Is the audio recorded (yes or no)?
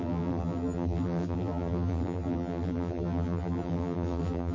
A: no